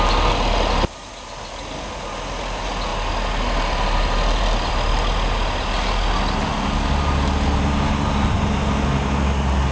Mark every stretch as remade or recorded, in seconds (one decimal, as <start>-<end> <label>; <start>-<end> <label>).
0.0-9.7 recorded

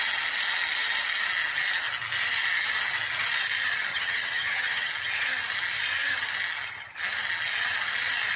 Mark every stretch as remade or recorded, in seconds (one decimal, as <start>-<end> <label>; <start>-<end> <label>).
0.0-3.9 recorded; 3.9-4.9 remade; 4.9-8.4 recorded

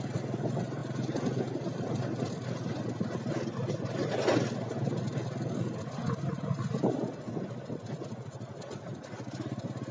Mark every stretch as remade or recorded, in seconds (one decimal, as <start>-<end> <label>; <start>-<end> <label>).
0.0-9.9 recorded

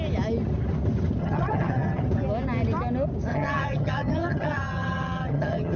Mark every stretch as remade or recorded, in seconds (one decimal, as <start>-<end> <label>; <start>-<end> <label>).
0.0-1.2 recorded; 1.2-2.0 remade; 2.0-3.3 recorded; 3.3-5.8 remade

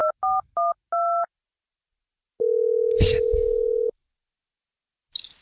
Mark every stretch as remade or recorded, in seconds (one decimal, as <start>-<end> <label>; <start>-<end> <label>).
0.0-5.4 recorded

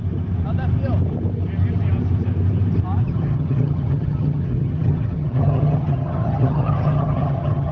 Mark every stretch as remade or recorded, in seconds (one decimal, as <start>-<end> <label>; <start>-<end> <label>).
0.0-3.0 recorded; 3.0-7.7 remade

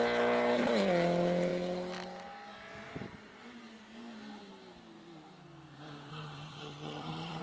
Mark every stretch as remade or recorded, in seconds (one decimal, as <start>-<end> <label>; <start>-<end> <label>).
0.0-6.1 recorded; 6.1-7.4 remade

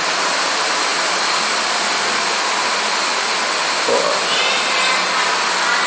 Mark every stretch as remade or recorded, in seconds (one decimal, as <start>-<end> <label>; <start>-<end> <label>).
0.0-5.9 recorded